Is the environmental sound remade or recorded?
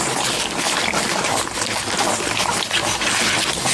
recorded